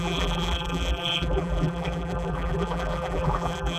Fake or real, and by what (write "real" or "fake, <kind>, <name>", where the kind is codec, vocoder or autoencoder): fake, vocoder, BigVGAN v2